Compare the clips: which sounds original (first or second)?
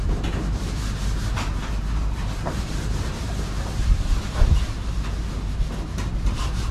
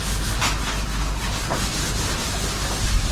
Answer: second